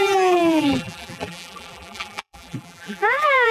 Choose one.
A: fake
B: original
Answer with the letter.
A